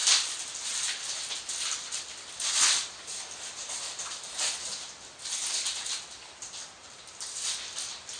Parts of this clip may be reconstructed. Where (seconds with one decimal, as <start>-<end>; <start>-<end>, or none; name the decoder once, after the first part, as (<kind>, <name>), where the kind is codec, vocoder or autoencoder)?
none